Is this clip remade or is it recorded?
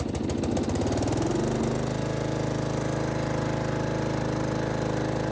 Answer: recorded